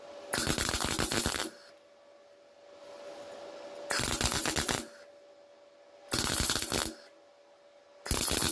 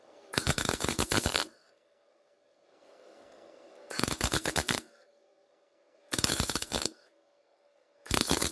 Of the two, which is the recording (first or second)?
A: first